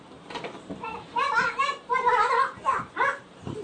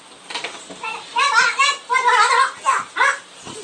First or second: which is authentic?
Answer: second